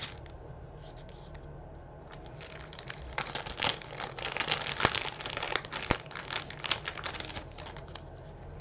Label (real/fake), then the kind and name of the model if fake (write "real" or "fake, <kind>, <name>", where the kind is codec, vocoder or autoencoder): real